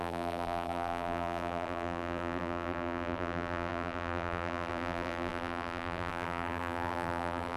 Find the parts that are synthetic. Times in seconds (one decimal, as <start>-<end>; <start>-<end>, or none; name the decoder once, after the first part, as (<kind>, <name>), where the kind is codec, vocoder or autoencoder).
0.0-7.6 (vocoder, BigVGAN v2)